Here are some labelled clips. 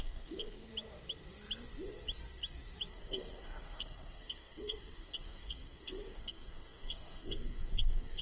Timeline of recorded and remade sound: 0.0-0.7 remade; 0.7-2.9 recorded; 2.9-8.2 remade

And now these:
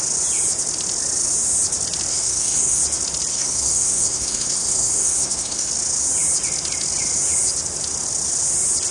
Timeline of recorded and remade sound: 0.0-2.1 recorded; 2.1-2.8 remade; 2.8-3.3 recorded; 3.3-5.7 remade; 5.7-8.9 recorded

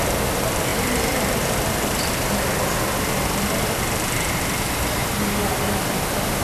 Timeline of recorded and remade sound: 0.0-6.4 recorded

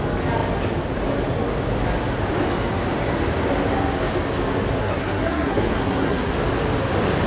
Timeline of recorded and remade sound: 0.0-4.8 recorded; 4.8-6.3 remade; 6.3-7.3 recorded

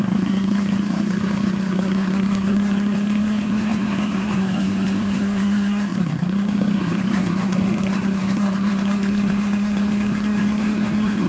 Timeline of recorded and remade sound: 0.0-11.3 remade

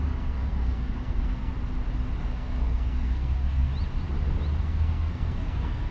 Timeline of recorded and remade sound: 0.0-1.5 remade; 1.5-2.2 recorded; 2.2-3.7 remade; 3.7-4.6 recorded; 4.6-5.9 remade

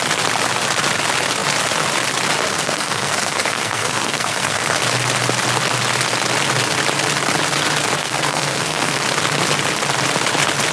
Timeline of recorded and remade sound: 0.0-2.5 recorded; 2.5-4.8 remade; 4.8-8.0 recorded; 8.0-9.0 remade; 9.0-10.7 recorded

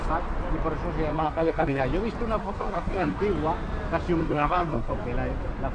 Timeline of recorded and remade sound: 0.0-1.1 recorded; 1.1-1.8 remade; 1.8-2.4 recorded; 2.4-3.2 remade; 3.2-4.2 recorded; 4.2-4.9 remade; 4.9-5.7 recorded